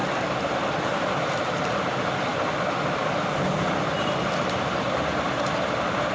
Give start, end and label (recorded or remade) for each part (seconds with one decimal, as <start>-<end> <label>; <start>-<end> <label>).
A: 0.0-6.1 recorded